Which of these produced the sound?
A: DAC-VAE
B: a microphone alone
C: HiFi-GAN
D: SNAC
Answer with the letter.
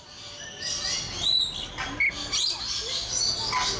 B